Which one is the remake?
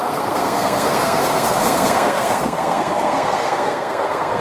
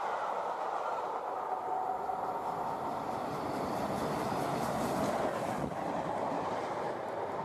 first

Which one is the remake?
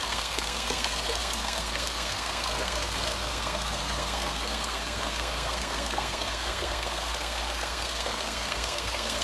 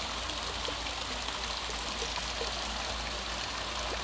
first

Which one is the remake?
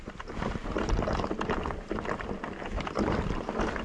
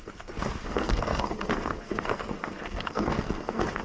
second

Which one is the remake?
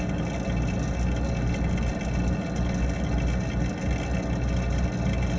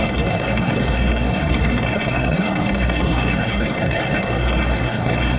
second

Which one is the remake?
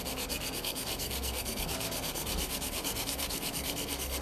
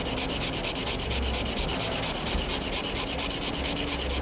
first